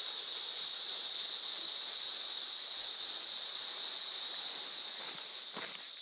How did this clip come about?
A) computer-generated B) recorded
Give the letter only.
B